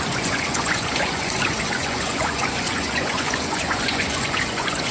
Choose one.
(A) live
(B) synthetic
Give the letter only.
B